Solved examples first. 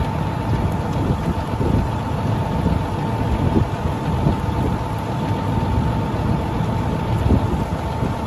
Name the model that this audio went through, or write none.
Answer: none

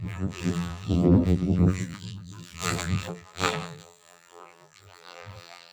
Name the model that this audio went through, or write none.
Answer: vocoder, BigVGAN v2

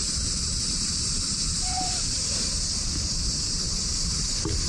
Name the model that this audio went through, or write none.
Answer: vocoder, BigVGAN v2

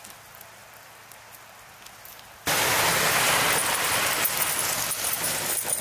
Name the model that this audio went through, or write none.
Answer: none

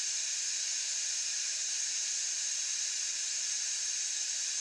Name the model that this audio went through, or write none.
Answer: vocoder, BigVGAN v2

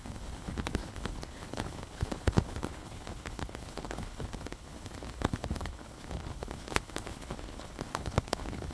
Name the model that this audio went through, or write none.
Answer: codec, HILCodec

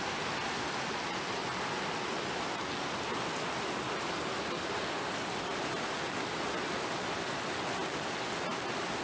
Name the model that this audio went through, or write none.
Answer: none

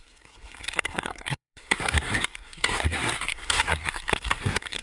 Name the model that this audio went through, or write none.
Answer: codec, SNAC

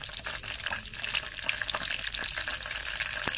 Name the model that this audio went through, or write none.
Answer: none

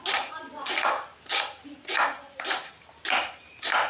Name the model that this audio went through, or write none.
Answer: none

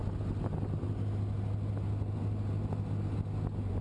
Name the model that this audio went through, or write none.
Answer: none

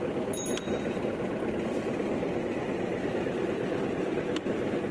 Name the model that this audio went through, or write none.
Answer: none